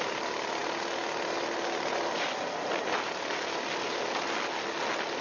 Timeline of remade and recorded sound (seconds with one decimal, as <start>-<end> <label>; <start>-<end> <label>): 0.0-5.2 recorded